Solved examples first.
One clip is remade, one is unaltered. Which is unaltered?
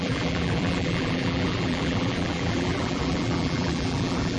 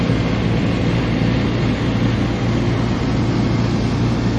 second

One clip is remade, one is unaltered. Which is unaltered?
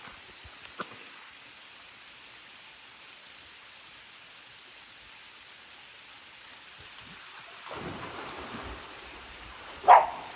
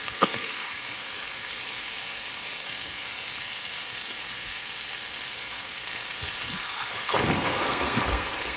first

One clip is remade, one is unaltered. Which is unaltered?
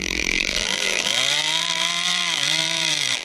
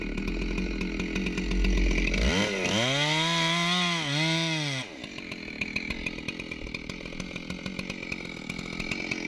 second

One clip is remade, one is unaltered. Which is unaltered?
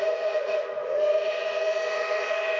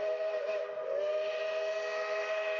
second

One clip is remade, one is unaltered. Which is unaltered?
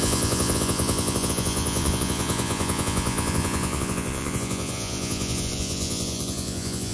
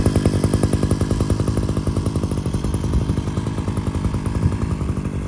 second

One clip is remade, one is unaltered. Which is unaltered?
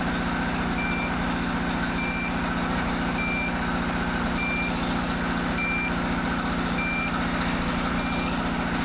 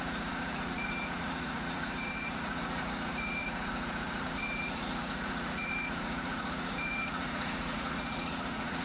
first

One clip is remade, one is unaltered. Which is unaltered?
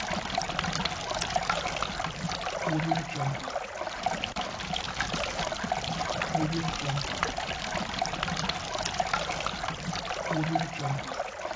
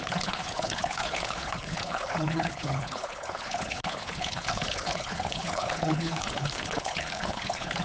first